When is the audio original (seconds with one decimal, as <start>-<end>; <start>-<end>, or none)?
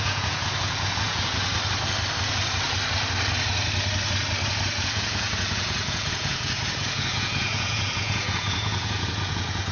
1.5-4.7